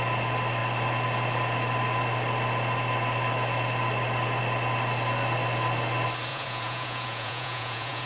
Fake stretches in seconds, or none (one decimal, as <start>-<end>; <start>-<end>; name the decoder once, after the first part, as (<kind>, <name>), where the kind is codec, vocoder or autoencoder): 6.3-8.1 (vocoder, Vocos)